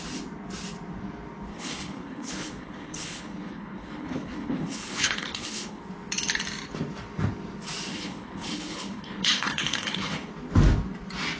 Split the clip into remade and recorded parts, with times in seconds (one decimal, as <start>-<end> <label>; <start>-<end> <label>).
0.0-1.5 recorded; 1.5-5.8 remade; 5.8-7.9 recorded; 7.9-10.3 remade; 10.3-11.4 recorded